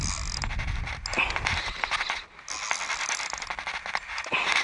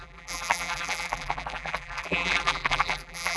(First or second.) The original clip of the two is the first